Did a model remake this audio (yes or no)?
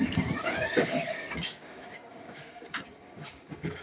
yes